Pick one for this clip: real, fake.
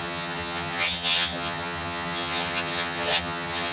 fake